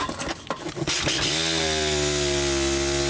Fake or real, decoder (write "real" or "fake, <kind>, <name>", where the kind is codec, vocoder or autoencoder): real